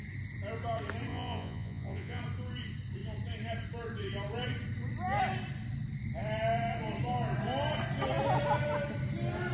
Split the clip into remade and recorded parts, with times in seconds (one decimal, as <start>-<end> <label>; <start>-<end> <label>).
0.0-1.1 recorded; 1.1-2.2 remade; 2.2-9.5 recorded